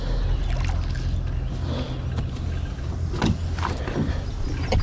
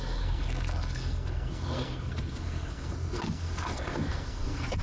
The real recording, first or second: first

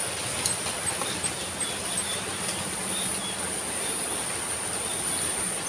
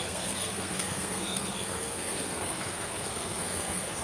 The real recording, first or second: first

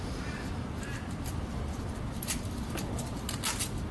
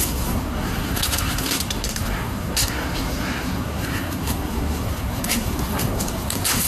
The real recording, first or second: first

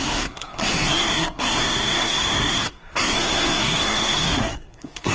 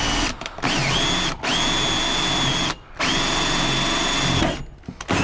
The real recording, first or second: second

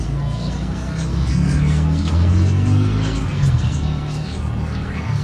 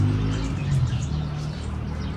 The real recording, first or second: second